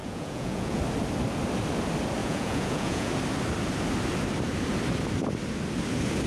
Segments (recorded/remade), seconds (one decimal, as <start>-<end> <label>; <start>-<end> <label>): 0.0-0.8 remade; 0.8-2.2 recorded; 2.2-3.1 remade; 3.1-6.3 recorded